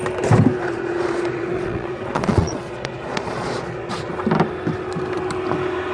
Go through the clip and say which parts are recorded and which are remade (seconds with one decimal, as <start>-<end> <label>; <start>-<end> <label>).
0.0-0.6 recorded; 0.6-4.1 remade; 4.1-5.9 recorded